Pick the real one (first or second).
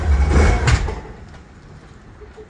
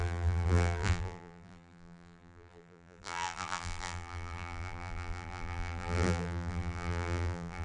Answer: first